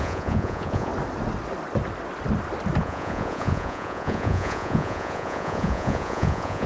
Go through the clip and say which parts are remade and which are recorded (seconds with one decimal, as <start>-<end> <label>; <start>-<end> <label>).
0.0-0.9 remade; 0.9-2.8 recorded; 2.8-6.7 remade